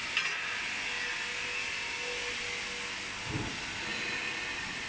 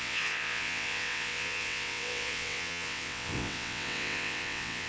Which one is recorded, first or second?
first